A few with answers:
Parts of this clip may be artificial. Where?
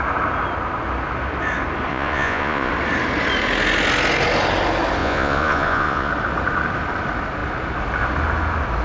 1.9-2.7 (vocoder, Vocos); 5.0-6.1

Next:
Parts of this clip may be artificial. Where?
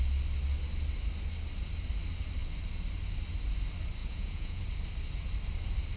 4.0-4.6 (vocoder, Vocos)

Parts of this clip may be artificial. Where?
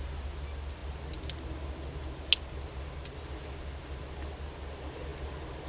none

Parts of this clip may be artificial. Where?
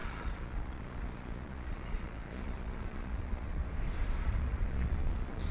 0.0-3.6 (vocoder, Vocos); 4.3-5.5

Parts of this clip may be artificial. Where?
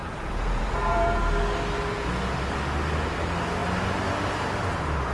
0.0-1.2 (vocoder, Vocos)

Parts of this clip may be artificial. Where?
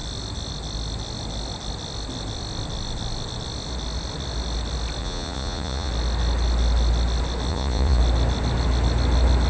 5.0-5.9 (vocoder, Vocos); 7.5-8.0